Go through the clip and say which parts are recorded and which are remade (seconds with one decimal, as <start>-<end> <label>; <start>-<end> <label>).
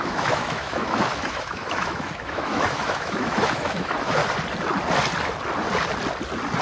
0.0-4.2 remade; 4.2-6.6 recorded